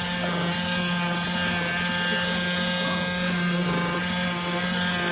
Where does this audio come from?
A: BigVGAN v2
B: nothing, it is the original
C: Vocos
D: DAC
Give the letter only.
B